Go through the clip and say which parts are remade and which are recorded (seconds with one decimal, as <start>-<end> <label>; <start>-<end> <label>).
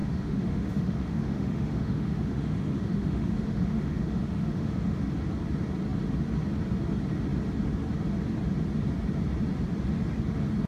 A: 0.0-5.1 remade; 5.1-10.7 recorded